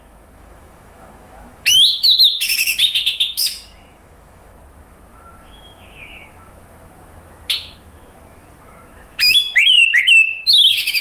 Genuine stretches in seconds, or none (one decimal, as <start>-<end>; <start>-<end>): none